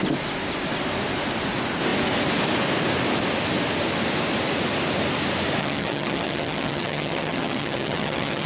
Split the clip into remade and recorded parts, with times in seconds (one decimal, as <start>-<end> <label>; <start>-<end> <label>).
0.0-5.6 recorded; 5.6-8.5 remade

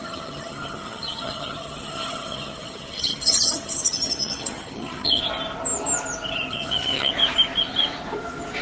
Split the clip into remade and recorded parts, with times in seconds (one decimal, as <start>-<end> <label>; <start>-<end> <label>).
0.0-5.2 remade; 5.2-6.5 recorded; 6.5-7.1 remade; 7.1-8.6 recorded

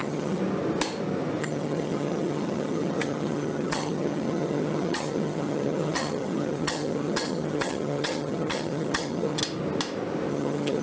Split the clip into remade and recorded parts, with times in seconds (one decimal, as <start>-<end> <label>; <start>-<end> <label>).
0.0-0.4 remade; 0.4-1.4 recorded; 1.4-9.4 remade; 9.4-10.3 recorded; 10.3-10.8 remade

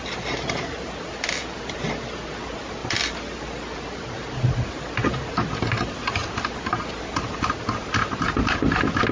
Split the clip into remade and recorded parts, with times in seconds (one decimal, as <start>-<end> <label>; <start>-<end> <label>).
0.0-9.1 recorded